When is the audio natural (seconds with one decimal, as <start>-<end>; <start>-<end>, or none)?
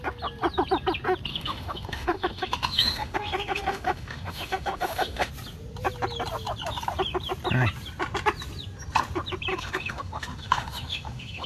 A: 0.0-1.3; 5.3-9.5